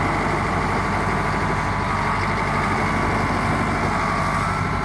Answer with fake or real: real